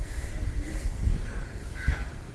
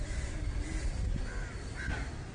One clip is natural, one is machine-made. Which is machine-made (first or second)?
first